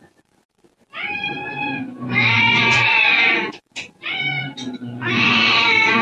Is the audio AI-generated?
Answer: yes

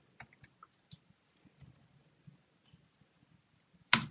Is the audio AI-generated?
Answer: no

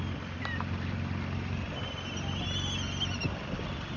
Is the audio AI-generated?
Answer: no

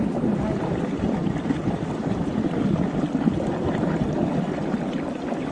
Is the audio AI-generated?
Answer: no